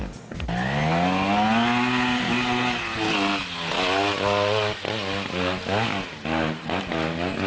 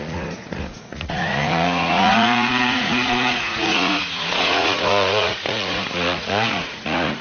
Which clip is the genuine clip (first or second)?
first